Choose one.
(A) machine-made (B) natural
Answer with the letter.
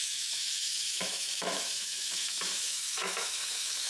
A